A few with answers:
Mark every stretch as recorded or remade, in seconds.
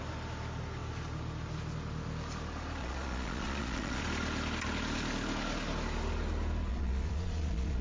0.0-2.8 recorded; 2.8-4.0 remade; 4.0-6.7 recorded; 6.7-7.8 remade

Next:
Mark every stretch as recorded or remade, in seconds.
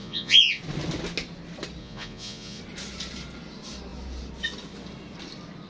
0.0-0.6 remade; 0.6-1.8 recorded; 1.8-2.6 remade; 2.6-5.7 recorded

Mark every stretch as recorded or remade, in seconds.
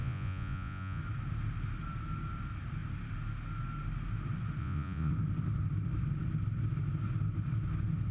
0.0-1.0 remade; 1.0-4.6 recorded; 4.6-5.1 remade; 5.1-8.1 recorded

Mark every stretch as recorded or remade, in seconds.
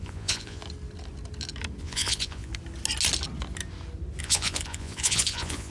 0.0-0.6 remade; 0.6-1.8 recorded; 1.8-2.5 remade; 2.5-4.2 recorded; 4.2-5.7 remade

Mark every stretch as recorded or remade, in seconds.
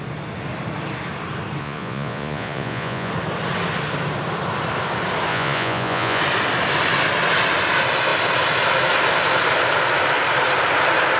0.0-1.6 recorded; 1.6-3.1 remade; 3.1-5.3 recorded; 5.3-6.2 remade; 6.2-11.2 recorded